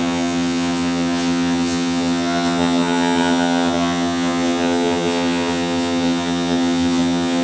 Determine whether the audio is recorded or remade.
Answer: remade